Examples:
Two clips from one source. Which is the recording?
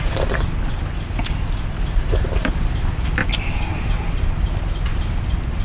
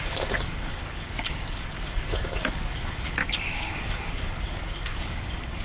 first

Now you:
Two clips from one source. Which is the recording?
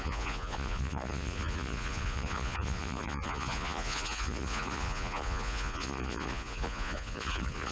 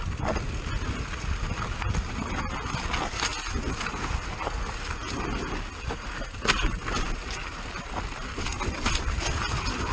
second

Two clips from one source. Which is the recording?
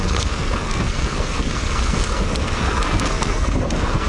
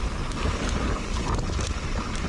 second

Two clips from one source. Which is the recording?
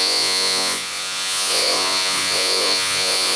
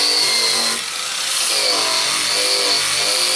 second